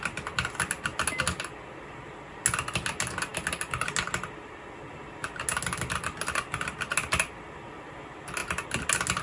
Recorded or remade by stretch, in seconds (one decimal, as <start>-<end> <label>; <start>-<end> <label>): 0.0-9.2 recorded